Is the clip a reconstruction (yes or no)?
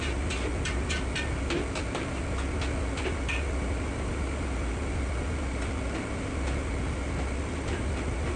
no